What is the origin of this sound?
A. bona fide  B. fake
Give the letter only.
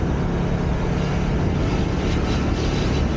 A